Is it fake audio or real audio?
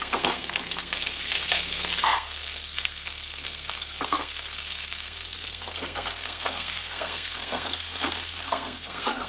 fake